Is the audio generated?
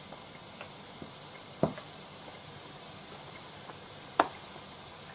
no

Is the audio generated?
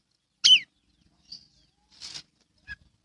no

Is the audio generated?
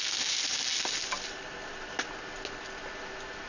no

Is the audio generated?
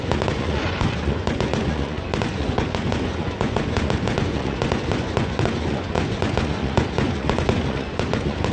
yes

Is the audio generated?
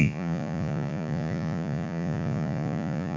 yes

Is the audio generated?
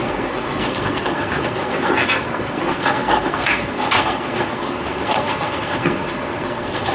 yes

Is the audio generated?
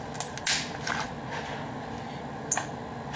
no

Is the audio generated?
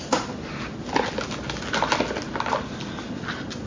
no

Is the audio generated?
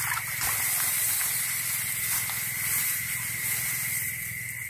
no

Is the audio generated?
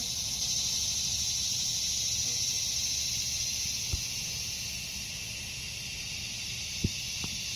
no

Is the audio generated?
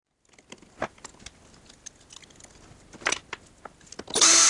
no